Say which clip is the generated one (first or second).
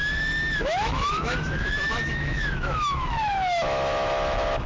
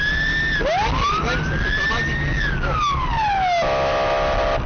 first